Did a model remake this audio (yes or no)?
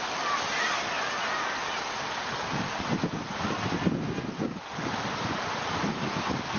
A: no